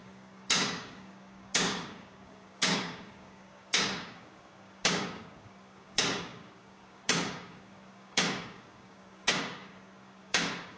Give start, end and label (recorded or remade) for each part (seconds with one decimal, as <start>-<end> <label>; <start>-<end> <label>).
0.0-10.8 remade